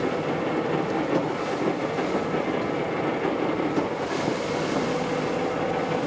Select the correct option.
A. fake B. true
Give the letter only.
B